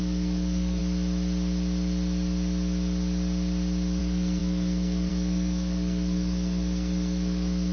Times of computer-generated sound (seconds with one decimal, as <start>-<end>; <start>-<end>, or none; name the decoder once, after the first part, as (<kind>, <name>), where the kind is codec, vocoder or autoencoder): 0.0-0.8 (codec, SNAC); 4.0-7.7